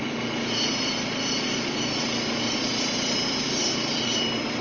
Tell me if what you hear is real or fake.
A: real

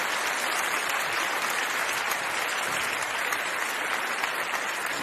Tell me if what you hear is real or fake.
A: real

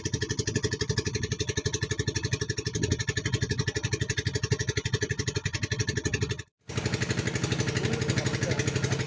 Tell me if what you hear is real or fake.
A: real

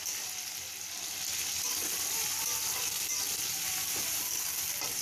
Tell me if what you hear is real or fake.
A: real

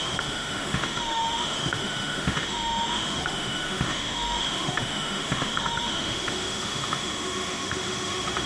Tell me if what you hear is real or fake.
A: fake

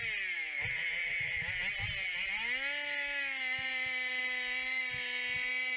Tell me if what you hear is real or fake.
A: real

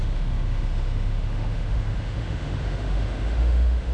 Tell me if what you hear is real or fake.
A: fake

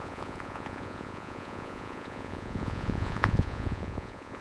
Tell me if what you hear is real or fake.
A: fake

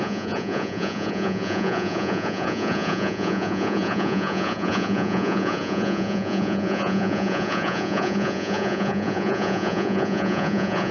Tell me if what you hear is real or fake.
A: fake